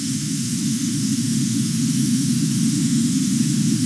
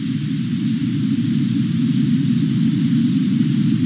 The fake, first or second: first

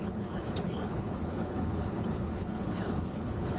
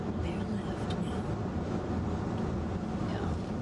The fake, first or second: first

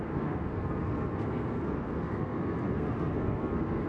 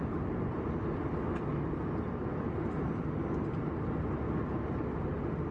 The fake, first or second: first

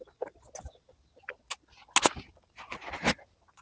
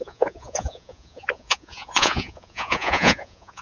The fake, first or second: second